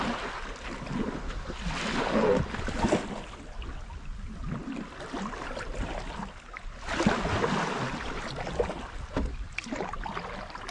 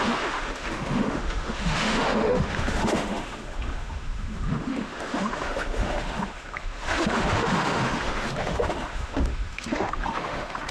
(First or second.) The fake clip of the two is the second